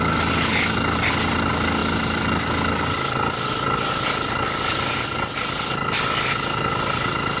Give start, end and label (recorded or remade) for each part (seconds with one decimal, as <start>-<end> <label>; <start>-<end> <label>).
0.0-7.4 recorded